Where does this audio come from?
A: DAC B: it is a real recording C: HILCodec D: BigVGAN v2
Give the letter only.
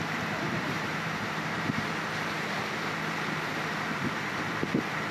D